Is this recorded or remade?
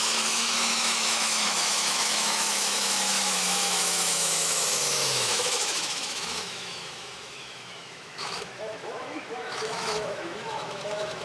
remade